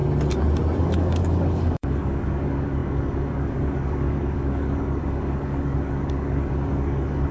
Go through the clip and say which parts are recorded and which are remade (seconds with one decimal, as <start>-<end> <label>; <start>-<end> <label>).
0.0-0.8 recorded; 0.8-7.3 remade